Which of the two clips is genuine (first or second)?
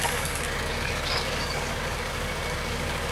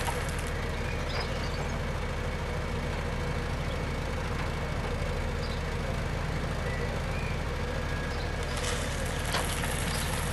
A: second